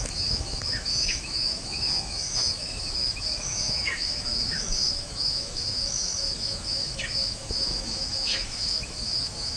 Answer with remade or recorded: remade